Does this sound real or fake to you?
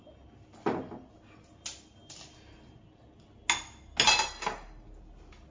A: real